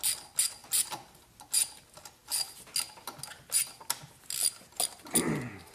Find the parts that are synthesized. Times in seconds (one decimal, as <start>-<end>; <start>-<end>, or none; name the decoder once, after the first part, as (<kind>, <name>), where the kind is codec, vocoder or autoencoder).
none